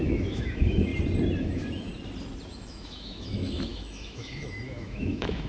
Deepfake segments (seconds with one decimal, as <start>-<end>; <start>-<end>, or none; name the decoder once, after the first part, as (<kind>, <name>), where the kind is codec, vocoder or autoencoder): 0.0-0.9 (autoencoder, DAC-VAE); 1.4-1.9; 2.5-5.5